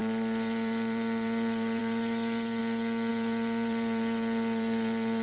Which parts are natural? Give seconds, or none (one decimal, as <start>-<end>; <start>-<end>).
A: 2.6-3.1